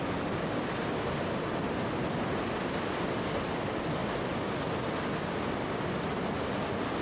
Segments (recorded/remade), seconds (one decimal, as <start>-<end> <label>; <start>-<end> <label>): 0.0-7.0 recorded

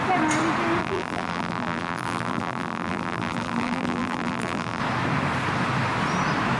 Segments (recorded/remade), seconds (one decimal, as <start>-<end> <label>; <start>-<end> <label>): 0.0-0.8 recorded; 0.8-4.8 remade; 4.8-6.6 recorded

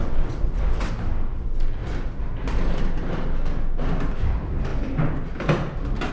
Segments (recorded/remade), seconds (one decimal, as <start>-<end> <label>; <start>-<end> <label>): 0.0-0.9 remade; 0.9-6.1 recorded

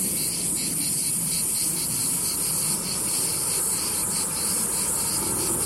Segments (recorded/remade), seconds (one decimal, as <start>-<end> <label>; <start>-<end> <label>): 0.0-2.0 recorded; 2.0-5.0 remade; 5.0-5.7 recorded

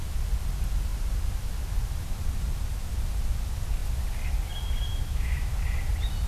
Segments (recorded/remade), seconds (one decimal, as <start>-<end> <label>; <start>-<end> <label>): 0.0-5.0 recorded; 5.0-5.5 remade; 5.5-6.3 recorded

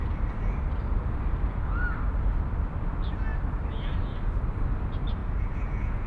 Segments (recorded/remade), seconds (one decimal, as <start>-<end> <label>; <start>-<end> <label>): 0.0-5.2 recorded; 5.2-6.1 remade

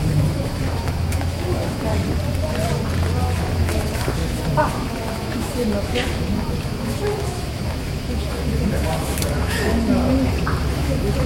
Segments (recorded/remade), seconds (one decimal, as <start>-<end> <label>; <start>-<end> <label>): 0.0-1.9 remade; 1.9-3.4 recorded; 3.4-9.7 remade; 9.7-10.7 recorded; 10.7-11.3 remade

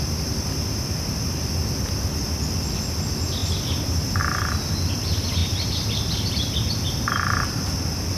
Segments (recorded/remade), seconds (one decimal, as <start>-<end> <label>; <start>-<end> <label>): 0.0-3.4 recorded; 3.4-4.2 remade; 4.2-5.4 recorded; 5.4-6.3 remade; 6.3-8.2 recorded